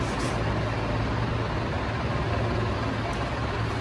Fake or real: real